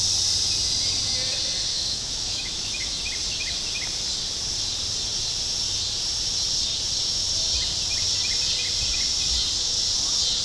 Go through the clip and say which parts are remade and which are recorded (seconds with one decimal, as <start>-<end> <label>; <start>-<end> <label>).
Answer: 0.0-1.7 recorded; 1.7-3.0 remade; 3.0-10.4 recorded